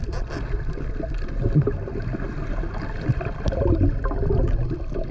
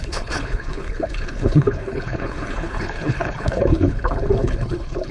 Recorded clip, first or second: first